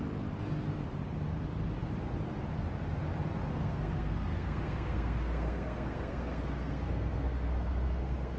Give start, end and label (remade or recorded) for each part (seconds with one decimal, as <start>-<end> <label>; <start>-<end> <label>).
0.0-3.5 recorded; 3.5-8.4 remade